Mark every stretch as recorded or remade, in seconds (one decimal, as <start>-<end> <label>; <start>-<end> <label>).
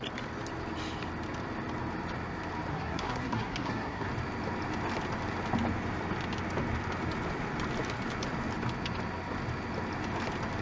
0.0-2.7 recorded; 2.7-4.1 remade; 4.1-10.6 recorded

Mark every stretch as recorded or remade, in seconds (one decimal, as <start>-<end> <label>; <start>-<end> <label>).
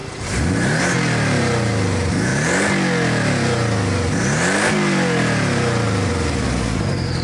0.0-1.4 remade; 1.4-7.2 recorded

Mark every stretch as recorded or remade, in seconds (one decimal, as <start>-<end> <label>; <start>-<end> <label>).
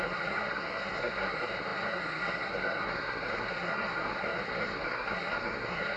0.0-6.0 remade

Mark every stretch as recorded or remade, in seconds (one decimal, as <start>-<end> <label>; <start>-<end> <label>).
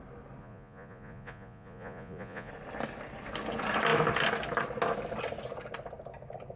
0.0-0.4 recorded; 0.4-2.5 remade; 2.5-6.6 recorded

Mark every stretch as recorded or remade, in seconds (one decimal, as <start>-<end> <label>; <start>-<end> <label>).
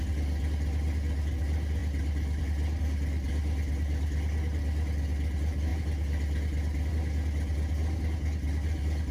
0.0-9.1 recorded